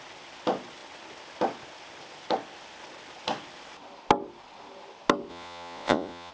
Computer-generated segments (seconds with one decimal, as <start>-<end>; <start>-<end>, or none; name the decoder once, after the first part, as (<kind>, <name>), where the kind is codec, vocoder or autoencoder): 5.3-6.3 (vocoder, Vocos)